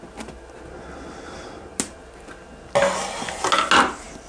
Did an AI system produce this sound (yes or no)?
no